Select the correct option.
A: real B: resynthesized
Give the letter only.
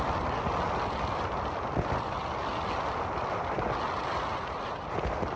A